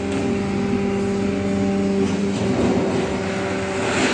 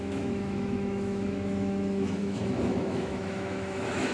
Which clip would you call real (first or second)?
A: first